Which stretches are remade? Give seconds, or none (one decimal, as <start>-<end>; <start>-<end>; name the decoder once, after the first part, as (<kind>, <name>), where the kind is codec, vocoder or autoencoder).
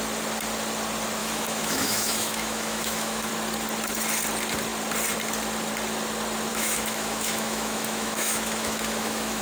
1.2-3.3 (autoencoder, DAC-VAE); 6.5-9.4